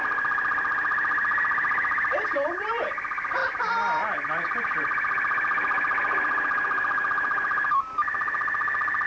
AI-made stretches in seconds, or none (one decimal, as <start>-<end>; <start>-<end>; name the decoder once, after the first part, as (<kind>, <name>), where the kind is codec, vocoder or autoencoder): none